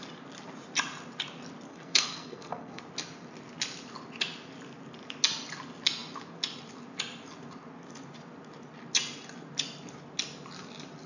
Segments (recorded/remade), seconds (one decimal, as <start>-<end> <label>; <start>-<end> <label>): 0.0-1.7 recorded; 1.7-2.8 remade; 2.8-11.1 recorded